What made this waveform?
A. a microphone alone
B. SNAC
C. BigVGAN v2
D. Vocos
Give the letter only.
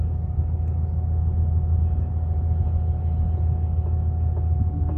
A